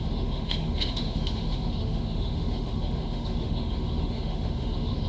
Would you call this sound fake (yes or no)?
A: yes